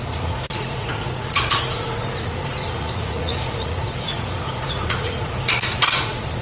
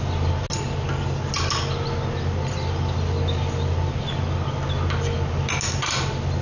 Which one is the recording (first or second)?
second